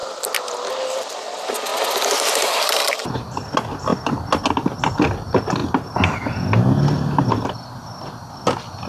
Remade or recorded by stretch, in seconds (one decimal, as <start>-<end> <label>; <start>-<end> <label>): 0.0-8.9 recorded